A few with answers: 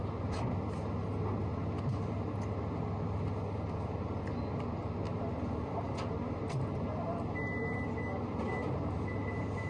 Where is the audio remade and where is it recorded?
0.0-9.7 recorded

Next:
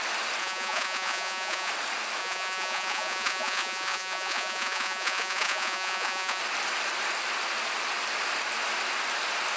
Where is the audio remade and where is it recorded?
0.0-0.4 recorded; 0.4-1.7 remade; 1.7-2.2 recorded; 2.2-6.4 remade; 6.4-9.6 recorded

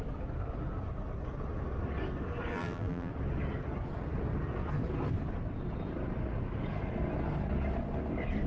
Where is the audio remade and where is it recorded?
0.0-2.5 recorded; 2.5-3.1 remade; 3.1-8.5 recorded